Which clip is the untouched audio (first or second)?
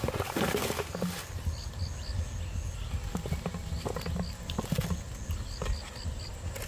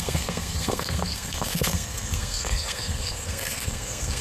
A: first